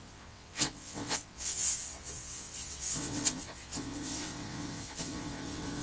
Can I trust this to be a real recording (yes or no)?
no